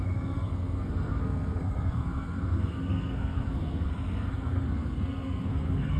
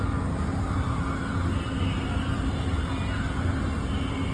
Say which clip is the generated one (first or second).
first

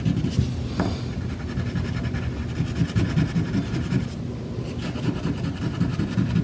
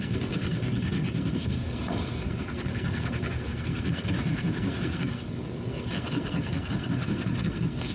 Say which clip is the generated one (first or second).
second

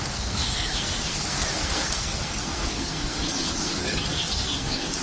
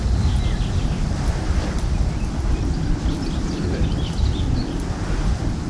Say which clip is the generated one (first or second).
first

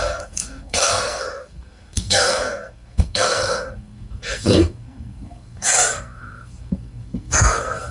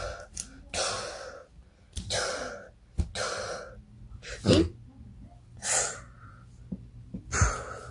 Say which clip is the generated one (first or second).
first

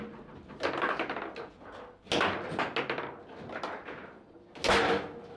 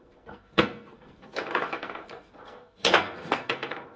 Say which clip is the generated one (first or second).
second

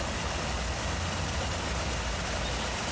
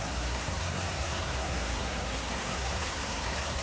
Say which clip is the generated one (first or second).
second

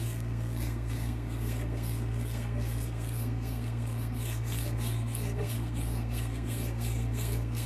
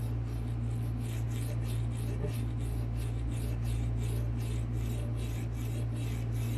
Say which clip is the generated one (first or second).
first